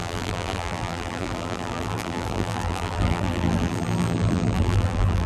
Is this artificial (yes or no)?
yes